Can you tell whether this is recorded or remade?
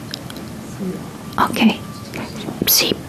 recorded